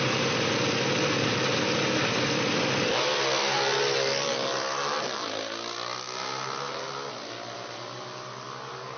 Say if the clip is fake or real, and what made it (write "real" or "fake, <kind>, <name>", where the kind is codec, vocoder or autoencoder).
real